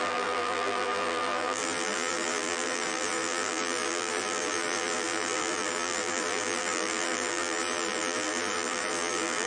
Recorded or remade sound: remade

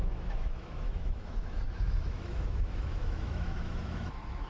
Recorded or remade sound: remade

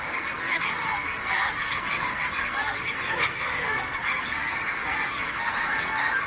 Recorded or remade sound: remade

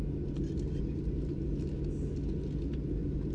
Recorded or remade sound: recorded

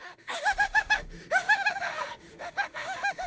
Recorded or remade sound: remade